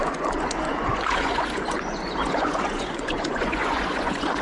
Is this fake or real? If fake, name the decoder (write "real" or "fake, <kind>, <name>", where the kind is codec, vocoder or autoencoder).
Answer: fake, vocoder, Vocos